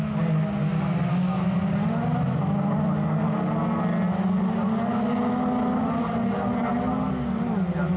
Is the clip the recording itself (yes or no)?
yes